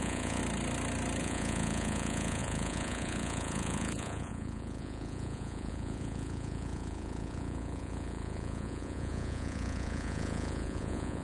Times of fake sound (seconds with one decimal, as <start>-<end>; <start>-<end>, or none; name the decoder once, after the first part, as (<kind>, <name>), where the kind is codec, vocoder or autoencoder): 0.0-0.4 (vocoder, Vocos); 1.2-11.2